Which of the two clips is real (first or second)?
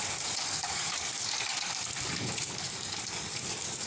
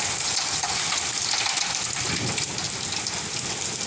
second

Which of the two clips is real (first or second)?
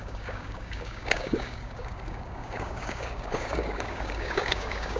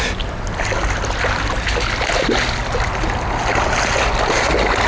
second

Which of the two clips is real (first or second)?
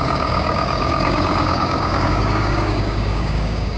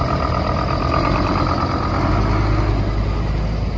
second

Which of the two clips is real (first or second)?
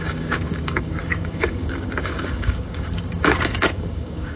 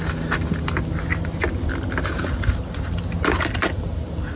second